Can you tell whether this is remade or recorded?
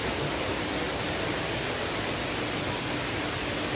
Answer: recorded